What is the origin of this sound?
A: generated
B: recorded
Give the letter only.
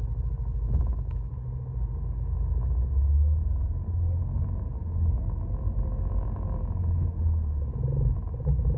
B